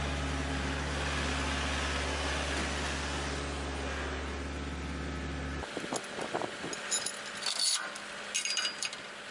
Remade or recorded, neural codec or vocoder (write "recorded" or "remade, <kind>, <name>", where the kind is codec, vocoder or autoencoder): recorded